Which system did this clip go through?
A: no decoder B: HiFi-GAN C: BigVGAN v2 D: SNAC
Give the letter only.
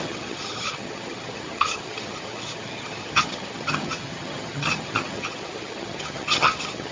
B